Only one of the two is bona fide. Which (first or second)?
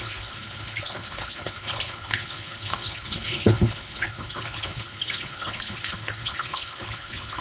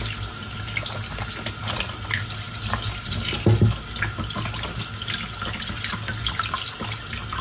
second